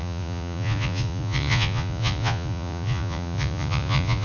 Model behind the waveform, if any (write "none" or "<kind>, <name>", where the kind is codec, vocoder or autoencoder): vocoder, Vocos